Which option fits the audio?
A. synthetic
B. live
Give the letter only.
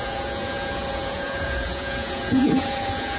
A